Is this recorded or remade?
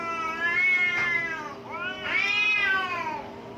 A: recorded